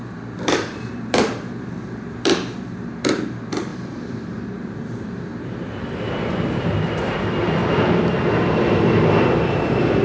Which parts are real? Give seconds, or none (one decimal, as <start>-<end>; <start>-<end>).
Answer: 7.6-8.3